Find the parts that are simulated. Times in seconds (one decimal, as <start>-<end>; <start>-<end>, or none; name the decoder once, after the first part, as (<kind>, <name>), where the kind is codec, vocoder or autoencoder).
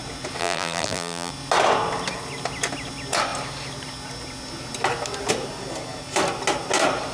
0.4-1.3 (vocoder, BigVGAN v2)